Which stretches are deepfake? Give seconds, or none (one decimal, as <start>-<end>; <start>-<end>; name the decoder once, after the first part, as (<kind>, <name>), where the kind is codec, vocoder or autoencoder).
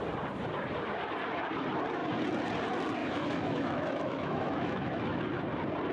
3.0-5.2 (autoencoder, DAC-VAE)